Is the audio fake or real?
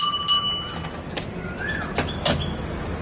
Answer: real